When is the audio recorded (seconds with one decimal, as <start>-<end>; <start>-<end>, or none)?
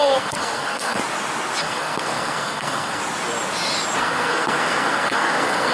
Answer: 1.0-1.6; 3.0-4.0